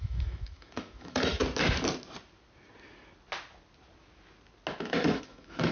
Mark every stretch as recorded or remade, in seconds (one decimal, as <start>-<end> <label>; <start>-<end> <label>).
0.0-1.4 remade; 1.4-4.8 recorded; 4.8-5.7 remade